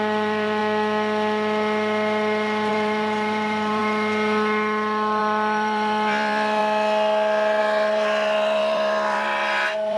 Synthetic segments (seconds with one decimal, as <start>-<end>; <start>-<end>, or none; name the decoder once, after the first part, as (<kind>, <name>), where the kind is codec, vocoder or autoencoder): 0.0-0.6 (vocoder, BigVGAN v2); 2.7-3.8; 5.2-6.6; 7.6-10.0